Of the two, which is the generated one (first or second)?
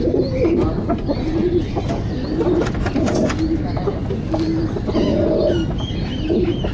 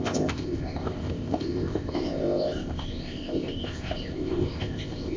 second